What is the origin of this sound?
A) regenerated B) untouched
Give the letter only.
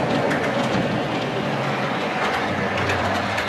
A